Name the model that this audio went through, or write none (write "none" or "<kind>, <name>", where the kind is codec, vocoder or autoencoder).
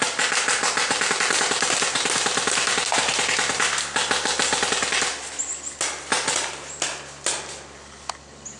none